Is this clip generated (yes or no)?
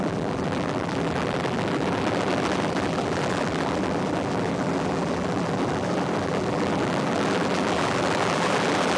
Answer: yes